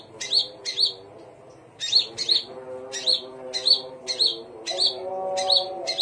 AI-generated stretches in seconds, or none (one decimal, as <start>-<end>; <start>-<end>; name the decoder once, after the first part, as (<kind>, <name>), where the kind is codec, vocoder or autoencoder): none